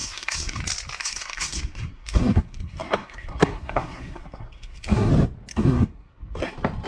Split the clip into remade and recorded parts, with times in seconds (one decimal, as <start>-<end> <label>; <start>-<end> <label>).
0.0-0.6 remade; 0.6-1.0 recorded; 1.0-5.1 remade; 5.1-5.5 recorded; 5.5-6.5 remade; 6.5-6.9 recorded